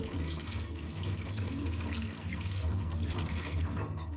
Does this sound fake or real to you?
fake